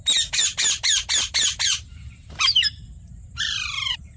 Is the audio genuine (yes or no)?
no